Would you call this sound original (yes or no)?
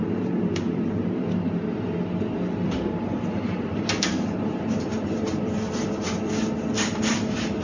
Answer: no